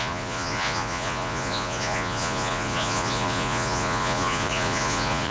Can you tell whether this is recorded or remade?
remade